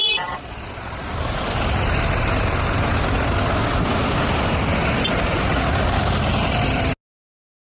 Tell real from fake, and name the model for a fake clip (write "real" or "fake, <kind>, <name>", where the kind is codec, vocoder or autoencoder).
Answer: real